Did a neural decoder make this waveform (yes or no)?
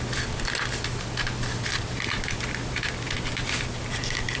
no